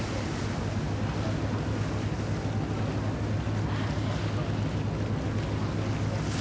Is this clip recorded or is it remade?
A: recorded